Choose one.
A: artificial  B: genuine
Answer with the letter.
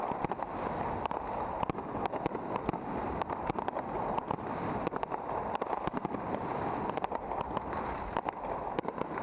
A